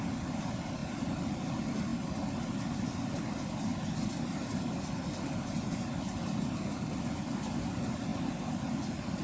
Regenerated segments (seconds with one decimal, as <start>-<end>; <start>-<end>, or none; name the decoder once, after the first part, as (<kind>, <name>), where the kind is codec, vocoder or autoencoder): none